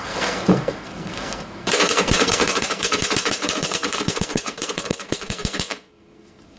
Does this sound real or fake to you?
fake